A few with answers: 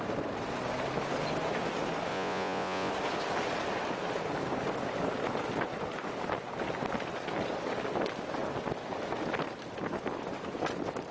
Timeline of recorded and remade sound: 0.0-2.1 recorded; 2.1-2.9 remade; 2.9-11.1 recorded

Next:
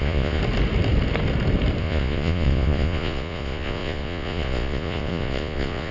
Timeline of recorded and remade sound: 0.0-0.4 remade; 0.4-1.8 recorded; 1.8-5.9 remade

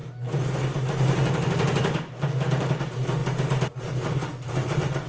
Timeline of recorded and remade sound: 0.0-5.1 recorded

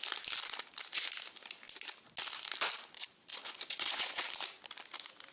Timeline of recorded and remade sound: 0.0-3.3 recorded; 3.3-4.2 remade; 4.2-5.3 recorded

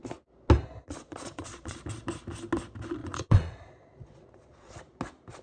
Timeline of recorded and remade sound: 0.0-0.8 recorded; 0.8-1.8 remade; 1.8-3.0 recorded; 3.0-4.7 remade; 4.7-5.4 recorded